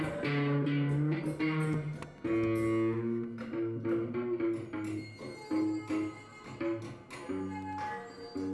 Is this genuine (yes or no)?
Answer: yes